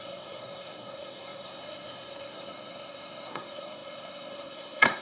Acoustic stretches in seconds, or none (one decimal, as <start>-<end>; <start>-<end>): none